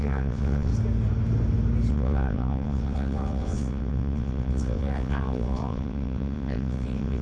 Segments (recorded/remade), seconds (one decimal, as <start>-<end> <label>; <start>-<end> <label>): 0.0-0.7 remade; 0.7-1.9 recorded; 1.9-7.2 remade